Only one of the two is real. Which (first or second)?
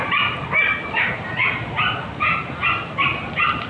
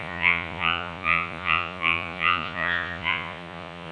first